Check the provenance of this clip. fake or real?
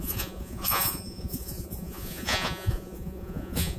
fake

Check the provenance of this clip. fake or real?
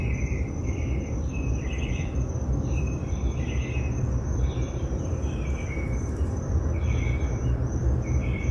fake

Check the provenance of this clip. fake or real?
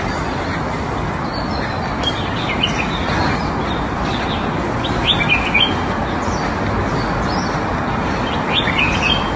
real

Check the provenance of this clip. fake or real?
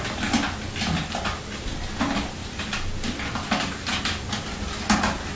real